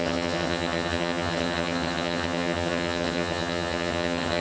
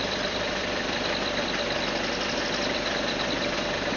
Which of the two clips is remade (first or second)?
first